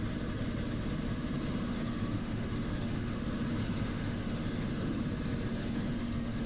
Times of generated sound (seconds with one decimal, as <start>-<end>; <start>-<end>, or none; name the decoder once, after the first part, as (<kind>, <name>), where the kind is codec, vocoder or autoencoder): 1.7-3.2 (autoencoder, DAC-VAE); 3.6-5.0; 5.5-6.5